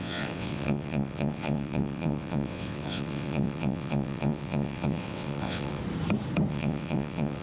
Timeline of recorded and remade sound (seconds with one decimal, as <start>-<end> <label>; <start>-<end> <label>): 0.0-5.8 remade; 5.8-6.5 recorded; 6.5-7.4 remade